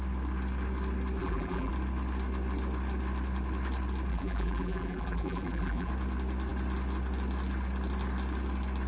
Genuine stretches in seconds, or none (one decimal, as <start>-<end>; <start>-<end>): 0.0-1.2; 1.7-4.1; 5.9-8.9